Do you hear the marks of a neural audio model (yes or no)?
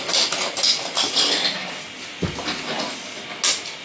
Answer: no